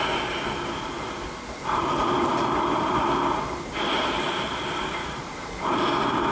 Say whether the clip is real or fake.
real